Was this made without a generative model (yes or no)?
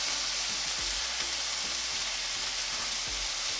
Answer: yes